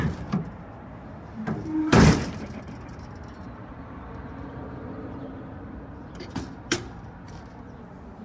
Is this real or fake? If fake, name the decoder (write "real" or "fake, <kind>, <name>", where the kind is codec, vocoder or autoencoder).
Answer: fake, vocoder, BigVGAN v2